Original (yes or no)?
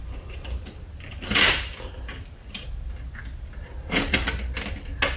yes